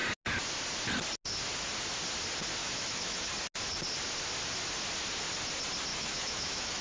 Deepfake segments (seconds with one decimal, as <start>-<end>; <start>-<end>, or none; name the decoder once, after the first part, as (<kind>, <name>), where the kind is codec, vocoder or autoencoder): 2.6-3.3 (autoencoder, DAC-VAE); 5.9-6.8